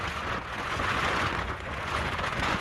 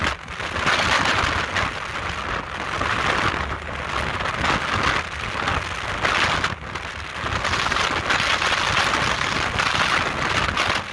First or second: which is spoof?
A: first